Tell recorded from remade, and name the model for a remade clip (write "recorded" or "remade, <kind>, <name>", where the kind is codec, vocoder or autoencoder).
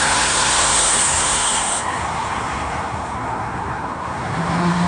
remade, codec, SNAC